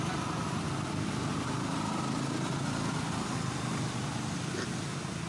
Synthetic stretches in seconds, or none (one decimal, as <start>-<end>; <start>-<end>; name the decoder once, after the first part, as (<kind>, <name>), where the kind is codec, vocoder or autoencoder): none